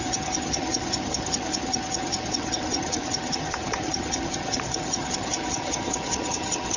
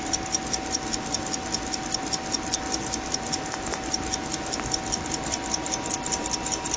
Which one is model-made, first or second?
first